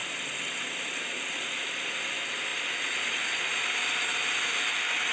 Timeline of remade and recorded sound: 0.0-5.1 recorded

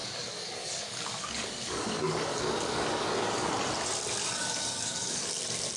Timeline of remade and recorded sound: 0.0-3.5 remade; 3.5-4.2 recorded; 4.2-5.3 remade; 5.3-5.8 recorded

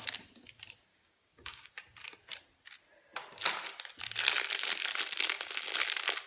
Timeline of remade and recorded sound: 0.0-0.9 recorded; 0.9-1.7 remade; 1.7-6.3 recorded